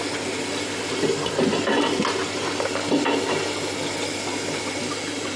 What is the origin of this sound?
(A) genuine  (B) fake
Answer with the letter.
A